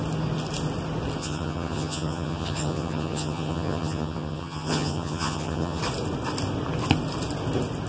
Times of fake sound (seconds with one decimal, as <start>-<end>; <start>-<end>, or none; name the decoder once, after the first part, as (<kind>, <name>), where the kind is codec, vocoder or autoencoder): 1.2-5.8 (vocoder, HiFi-GAN)